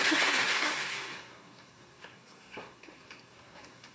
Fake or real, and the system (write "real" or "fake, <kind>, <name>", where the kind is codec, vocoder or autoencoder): fake, codec, SNAC